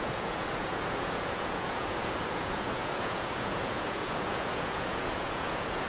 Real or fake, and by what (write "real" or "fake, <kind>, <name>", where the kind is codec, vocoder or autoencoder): fake, vocoder, Vocos